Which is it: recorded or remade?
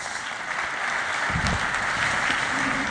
recorded